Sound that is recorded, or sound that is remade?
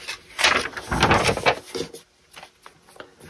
recorded